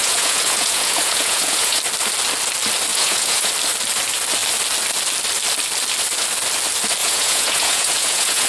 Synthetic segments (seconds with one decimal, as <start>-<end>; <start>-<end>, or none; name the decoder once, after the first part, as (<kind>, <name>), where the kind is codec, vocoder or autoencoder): 0.0-1.8 (vocoder, Vocos); 2.9-3.5; 7.0-8.5